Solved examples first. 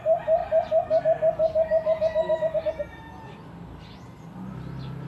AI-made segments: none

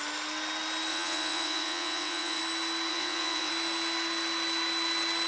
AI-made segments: 0.9-2.4 (vocoder, WaveNeXt); 2.9-3.5

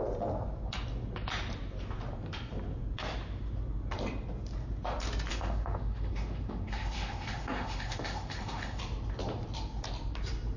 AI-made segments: 5.3-8.8 (autoencoder, DAC-VAE)

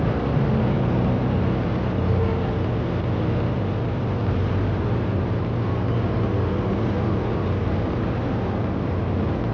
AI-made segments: none

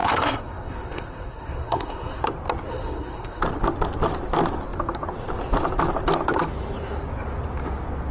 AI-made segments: 0.0-2.2 (codec, SNAC); 2.7-3.4

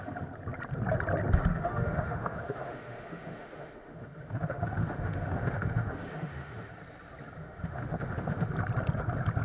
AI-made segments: 1.5-6.7 (autoencoder, DAC-VAE); 7.4-8.5